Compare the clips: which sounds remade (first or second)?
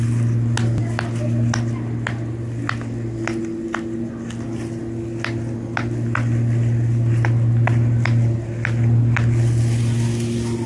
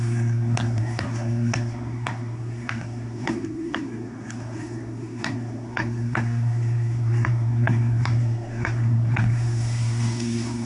second